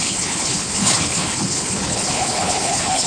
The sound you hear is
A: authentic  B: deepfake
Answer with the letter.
B